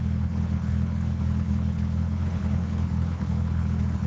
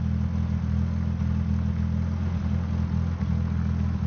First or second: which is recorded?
second